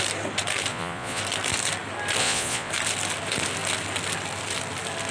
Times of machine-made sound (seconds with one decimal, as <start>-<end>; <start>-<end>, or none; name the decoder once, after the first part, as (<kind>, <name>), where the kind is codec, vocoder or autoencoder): 0.7-1.2 (vocoder, Vocos); 2.2-2.7